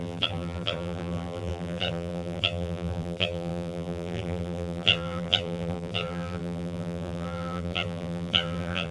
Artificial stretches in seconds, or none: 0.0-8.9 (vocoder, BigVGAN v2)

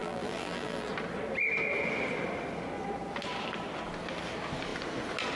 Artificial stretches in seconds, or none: 0.0-0.9 (vocoder, BigVGAN v2)

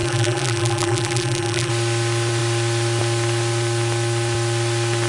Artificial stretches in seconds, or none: 0.0-1.7 (vocoder, BigVGAN v2)

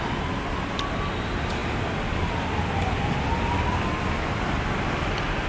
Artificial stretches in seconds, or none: none

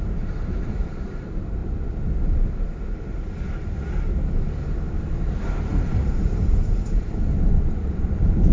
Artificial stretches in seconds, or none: 0.0-1.6 (vocoder, BigVGAN v2); 4.9-8.5

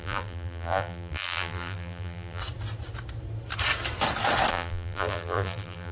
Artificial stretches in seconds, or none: 0.0-2.4 (vocoder, BigVGAN v2); 4.5-5.9